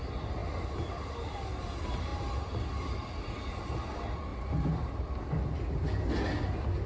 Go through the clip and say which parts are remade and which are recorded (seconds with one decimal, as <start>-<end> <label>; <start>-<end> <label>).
0.0-4.3 recorded; 4.3-4.9 remade; 4.9-6.9 recorded